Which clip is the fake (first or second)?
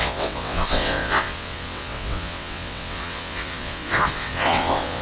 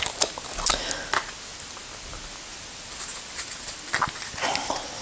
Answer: first